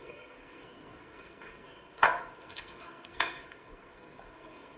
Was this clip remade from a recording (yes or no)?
yes